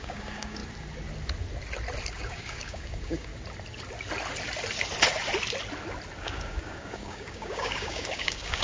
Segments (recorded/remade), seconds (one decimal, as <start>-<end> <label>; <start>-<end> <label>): 0.0-0.6 remade; 0.6-2.1 recorded; 2.1-3.3 remade; 3.3-6.2 recorded; 6.2-8.6 remade